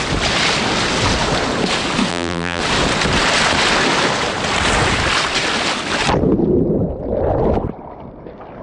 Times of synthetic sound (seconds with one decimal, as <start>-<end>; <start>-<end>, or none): 2.1-2.6